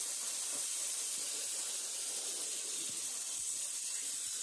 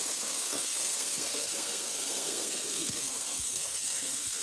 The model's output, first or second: second